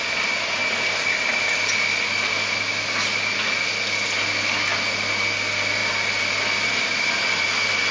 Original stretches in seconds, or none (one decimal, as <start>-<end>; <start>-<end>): 0.0-7.9